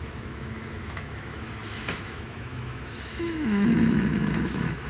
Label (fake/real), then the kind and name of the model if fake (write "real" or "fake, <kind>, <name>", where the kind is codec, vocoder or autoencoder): fake, autoencoder, DAC-VAE